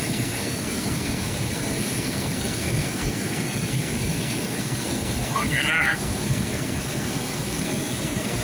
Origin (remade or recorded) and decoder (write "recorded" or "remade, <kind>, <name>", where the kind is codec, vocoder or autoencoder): remade, codec, SNAC